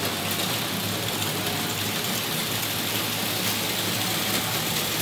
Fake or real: real